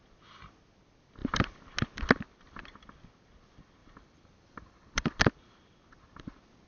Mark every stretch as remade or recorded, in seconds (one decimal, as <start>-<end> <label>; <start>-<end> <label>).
0.0-3.8 recorded; 3.8-5.3 remade; 5.3-6.7 recorded